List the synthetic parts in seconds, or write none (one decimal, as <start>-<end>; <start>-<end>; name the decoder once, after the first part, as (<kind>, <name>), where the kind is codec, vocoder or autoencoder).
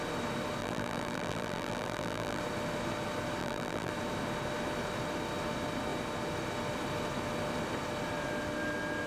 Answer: 0.6-2.4 (vocoder, BigVGAN v2); 3.4-3.9